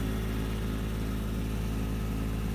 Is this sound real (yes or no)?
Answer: yes